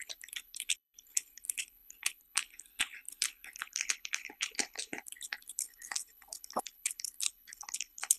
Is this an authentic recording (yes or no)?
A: no